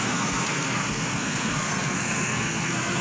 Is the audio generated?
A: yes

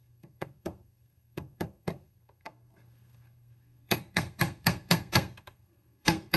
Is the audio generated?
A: yes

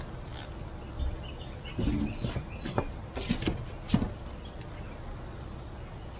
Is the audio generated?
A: no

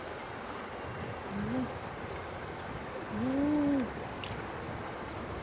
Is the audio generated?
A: no